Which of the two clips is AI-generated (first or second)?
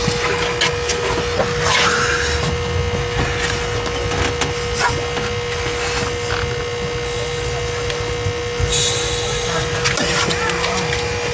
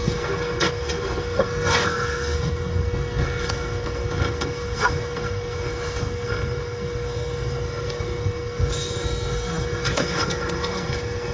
second